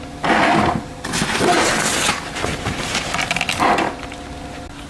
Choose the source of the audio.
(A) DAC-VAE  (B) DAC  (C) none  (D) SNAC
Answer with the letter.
C